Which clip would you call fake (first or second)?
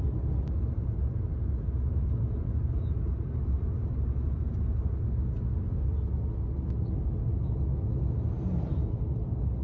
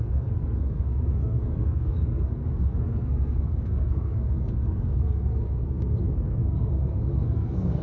second